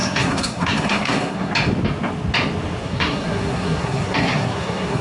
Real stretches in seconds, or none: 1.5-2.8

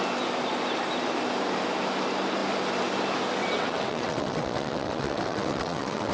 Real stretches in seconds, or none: 0.0-3.4

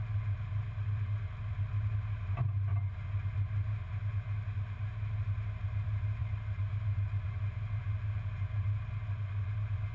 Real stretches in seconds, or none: 0.0-9.9

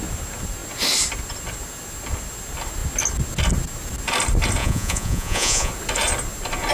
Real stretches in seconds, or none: 0.0-4.6; 5.7-6.7

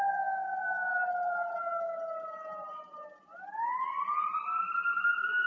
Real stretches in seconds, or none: 0.0-5.5

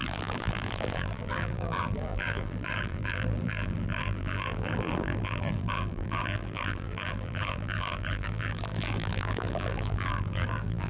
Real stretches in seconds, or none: none